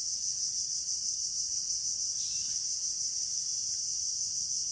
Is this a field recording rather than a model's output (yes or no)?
yes